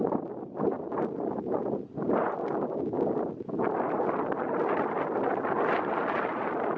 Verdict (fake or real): real